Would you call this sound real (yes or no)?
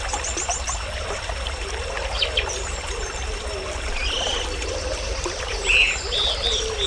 no